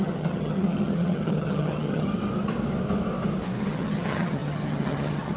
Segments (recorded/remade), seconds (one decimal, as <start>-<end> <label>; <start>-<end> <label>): 0.0-2.1 remade; 2.1-3.6 recorded; 3.6-5.4 remade